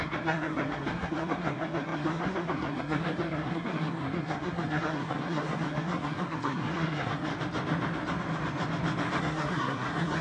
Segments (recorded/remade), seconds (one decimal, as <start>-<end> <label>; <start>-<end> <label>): 0.0-7.3 remade; 7.3-9.2 recorded; 9.2-10.2 remade